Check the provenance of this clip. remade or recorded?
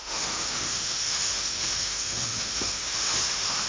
remade